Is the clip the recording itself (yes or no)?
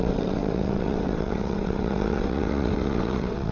no